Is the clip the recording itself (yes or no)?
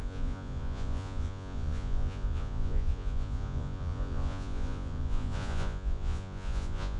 no